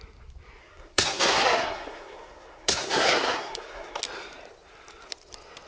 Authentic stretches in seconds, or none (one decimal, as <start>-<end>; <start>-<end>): 0.0-0.6; 4.0-5.7